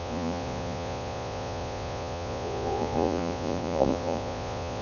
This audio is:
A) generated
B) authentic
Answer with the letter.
A